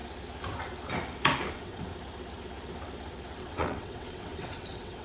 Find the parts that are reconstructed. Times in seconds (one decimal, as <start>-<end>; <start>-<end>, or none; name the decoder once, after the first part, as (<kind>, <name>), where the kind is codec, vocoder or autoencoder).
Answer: 1.5-1.9 (vocoder, WaveNeXt); 3.4-5.0